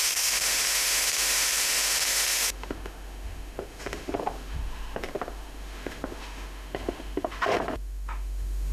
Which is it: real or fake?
fake